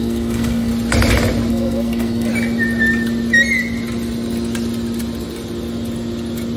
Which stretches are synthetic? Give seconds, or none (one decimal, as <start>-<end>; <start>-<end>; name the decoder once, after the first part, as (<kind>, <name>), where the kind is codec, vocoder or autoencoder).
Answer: 0.0-0.7 (codec, SNAC); 1.5-2.3